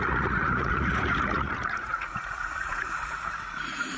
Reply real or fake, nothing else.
fake